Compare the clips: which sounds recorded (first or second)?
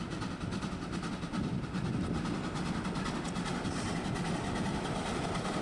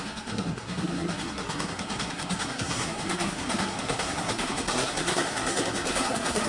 first